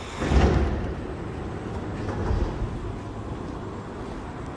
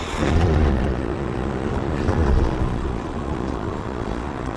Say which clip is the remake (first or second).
second